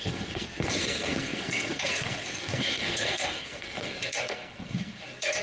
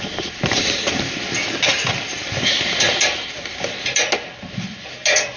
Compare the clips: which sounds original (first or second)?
second